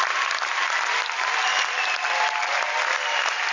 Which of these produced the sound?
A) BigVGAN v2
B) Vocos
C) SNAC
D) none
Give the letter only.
D